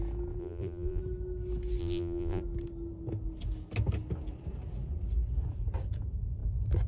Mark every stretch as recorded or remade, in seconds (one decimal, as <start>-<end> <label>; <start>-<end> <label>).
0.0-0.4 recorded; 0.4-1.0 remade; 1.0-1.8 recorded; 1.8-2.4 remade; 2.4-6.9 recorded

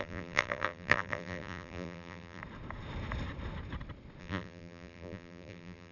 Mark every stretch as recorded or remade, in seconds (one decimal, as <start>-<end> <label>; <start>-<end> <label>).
0.0-2.4 remade; 2.4-4.2 recorded; 4.2-5.9 remade

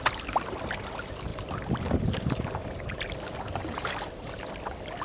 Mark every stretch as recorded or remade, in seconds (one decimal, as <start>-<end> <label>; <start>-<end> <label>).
0.0-1.3 recorded; 1.3-4.3 remade; 4.3-5.0 recorded